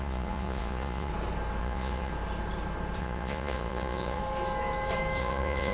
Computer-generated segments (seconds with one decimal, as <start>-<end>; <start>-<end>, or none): 0.0-1.1; 1.6-2.1; 3.0-4.2; 5.2-5.7